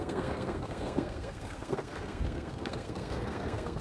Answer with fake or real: fake